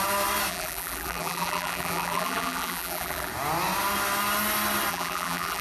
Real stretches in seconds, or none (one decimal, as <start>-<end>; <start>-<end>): 0.0-0.5; 3.3-4.9